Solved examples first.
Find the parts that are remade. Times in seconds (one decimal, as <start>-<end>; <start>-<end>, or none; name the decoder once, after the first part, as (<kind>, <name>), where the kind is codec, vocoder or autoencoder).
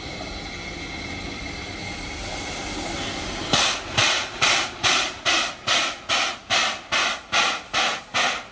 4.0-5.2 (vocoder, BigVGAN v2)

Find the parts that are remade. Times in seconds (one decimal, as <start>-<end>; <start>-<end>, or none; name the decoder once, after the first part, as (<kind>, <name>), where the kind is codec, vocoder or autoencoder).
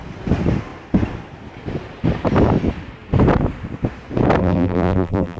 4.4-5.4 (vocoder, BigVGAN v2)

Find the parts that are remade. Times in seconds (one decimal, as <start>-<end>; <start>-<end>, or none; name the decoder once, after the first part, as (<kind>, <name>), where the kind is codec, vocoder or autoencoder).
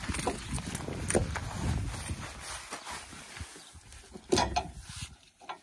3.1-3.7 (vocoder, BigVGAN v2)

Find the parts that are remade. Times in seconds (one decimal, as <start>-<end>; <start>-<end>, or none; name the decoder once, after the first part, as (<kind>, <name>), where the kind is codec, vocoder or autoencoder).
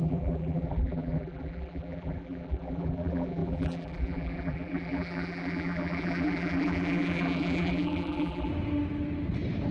0.0-8.5 (vocoder, BigVGAN v2)